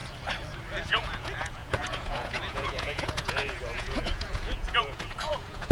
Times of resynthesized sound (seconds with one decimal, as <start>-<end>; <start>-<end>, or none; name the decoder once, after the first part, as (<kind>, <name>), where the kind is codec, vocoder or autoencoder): 0.9-5.7 (vocoder, Vocos)